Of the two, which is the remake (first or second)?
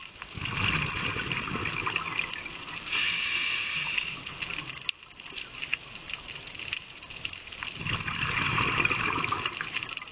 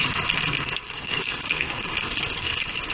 second